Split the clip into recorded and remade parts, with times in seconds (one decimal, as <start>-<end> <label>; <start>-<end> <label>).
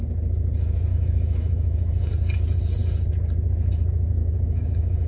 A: 0.0-0.9 recorded; 0.9-2.1 remade; 2.1-4.2 recorded; 4.2-5.1 remade